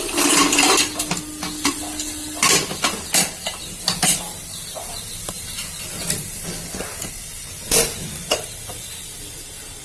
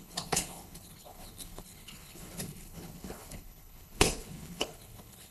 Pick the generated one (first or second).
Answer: second